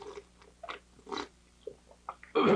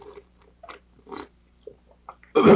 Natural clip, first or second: first